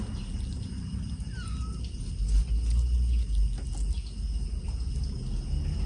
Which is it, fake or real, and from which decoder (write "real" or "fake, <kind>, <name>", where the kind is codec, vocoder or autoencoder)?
real